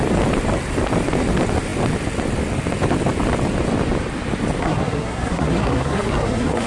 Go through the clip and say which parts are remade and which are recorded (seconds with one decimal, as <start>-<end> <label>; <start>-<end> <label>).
0.0-4.6 recorded; 4.6-6.7 remade